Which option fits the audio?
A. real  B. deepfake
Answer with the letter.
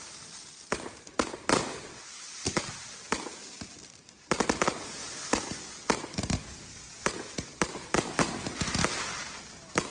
A